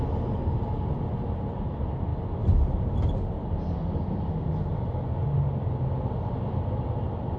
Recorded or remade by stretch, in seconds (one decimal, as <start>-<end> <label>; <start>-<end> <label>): 0.0-7.4 recorded